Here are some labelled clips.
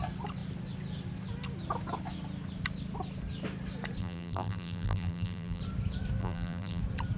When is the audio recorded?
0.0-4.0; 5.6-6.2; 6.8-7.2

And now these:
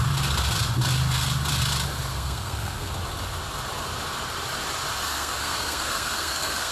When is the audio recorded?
0.0-2.1; 2.9-5.1